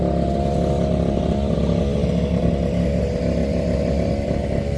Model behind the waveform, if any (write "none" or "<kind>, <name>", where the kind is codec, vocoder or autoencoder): none